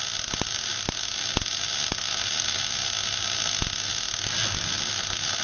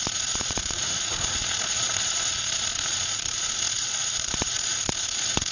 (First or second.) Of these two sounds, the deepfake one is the second